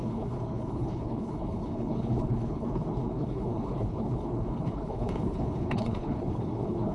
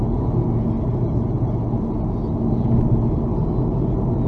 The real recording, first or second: second